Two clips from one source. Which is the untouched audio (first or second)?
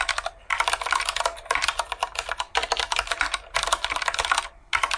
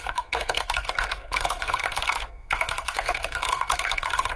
first